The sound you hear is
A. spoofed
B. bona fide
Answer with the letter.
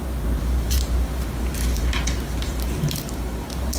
A